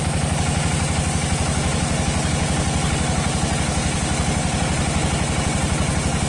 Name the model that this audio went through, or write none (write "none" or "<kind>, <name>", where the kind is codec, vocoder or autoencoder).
none